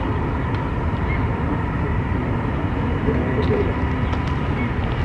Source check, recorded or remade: recorded